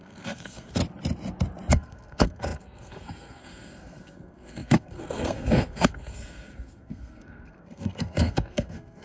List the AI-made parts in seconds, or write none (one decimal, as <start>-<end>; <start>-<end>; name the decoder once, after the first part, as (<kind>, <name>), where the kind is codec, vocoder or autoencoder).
0.0-0.8 (codec, SNAC); 1.7-9.0